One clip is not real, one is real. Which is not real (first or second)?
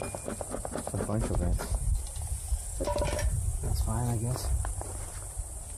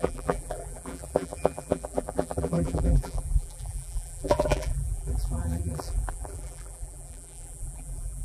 second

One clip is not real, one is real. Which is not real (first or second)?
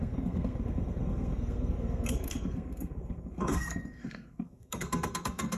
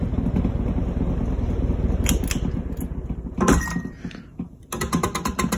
first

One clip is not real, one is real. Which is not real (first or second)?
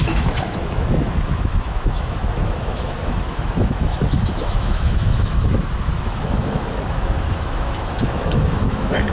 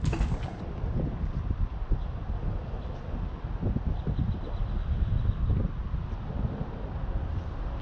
first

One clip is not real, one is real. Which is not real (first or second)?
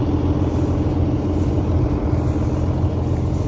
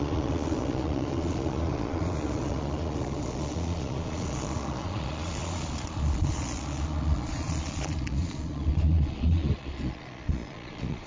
second